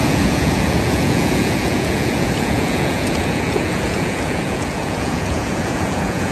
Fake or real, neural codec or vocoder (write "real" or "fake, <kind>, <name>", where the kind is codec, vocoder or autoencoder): fake, vocoder, Vocos